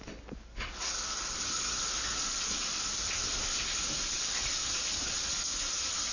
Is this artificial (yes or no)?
no